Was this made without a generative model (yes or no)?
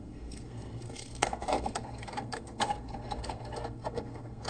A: no